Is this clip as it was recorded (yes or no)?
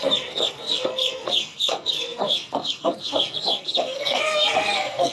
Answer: no